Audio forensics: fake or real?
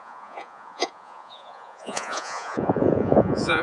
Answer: fake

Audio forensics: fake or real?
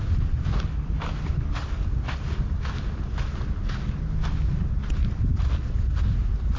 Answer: real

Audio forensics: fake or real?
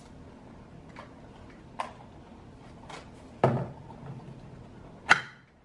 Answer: real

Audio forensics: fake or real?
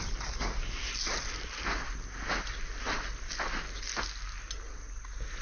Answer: real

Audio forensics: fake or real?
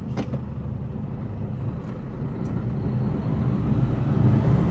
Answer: real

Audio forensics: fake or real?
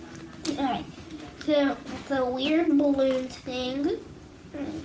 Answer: real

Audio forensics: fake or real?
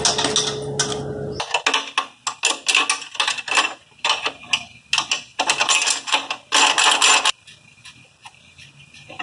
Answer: real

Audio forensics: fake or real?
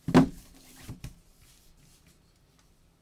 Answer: real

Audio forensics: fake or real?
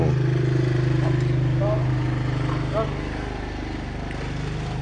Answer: real